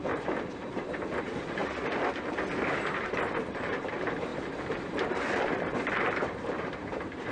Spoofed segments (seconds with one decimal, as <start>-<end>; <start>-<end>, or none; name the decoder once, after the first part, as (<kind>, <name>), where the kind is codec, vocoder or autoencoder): 0.0-1.6 (vocoder, BigVGAN v2); 3.0-7.3